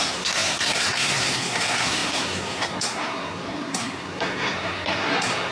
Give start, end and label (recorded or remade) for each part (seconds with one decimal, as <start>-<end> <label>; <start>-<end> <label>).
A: 0.0-5.5 remade